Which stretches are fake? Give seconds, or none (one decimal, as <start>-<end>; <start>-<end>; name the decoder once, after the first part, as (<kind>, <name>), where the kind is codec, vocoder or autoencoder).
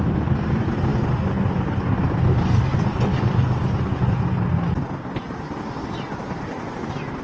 none